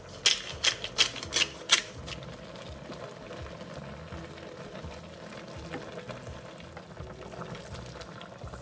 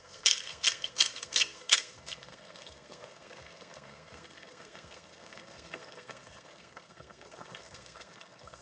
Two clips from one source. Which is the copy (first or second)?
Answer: second